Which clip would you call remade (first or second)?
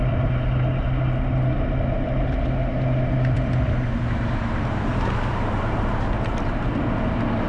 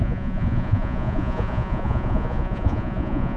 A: second